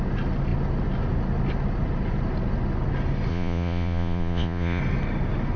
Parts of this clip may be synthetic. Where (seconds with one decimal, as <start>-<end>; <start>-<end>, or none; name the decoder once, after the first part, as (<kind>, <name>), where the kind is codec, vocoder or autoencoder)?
3.3-4.8 (vocoder, Vocos)